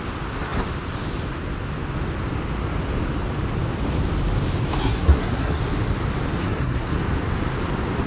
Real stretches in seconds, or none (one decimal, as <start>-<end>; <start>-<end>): 0.0-4.8; 5.6-6.4; 7.0-8.1